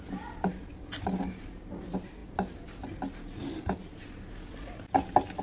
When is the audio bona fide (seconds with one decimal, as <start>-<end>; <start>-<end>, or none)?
0.0-5.4